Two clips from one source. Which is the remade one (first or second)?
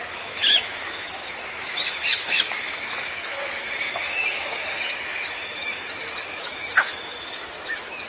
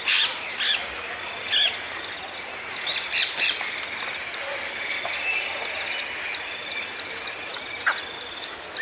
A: first